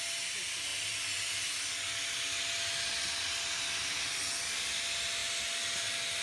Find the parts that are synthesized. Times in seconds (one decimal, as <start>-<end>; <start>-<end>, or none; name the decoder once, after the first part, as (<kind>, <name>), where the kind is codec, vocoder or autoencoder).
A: none